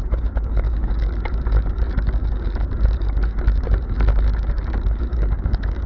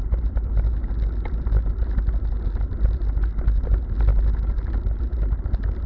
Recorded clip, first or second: second